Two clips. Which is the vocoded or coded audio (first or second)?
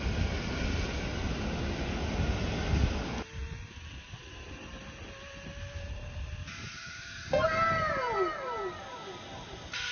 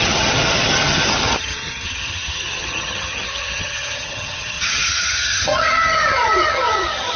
second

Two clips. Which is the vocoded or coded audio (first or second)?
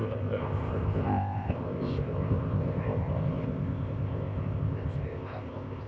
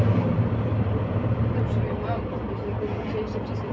first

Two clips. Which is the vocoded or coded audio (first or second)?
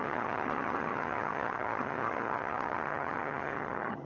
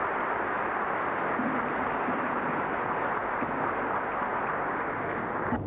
first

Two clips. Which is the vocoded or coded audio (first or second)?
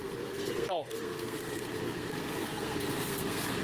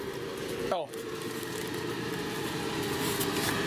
first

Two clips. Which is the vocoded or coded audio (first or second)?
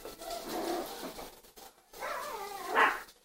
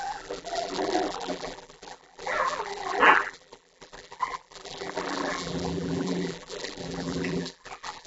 second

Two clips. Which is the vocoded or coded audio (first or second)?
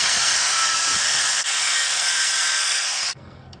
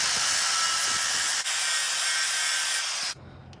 first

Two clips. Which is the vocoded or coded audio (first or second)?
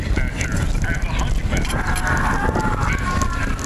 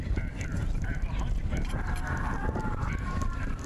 second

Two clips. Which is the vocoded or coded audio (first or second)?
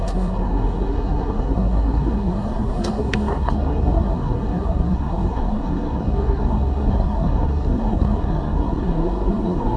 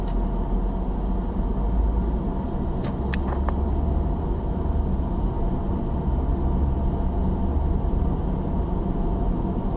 first